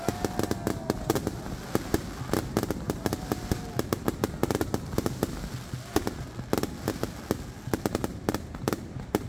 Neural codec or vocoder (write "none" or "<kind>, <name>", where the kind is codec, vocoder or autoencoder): none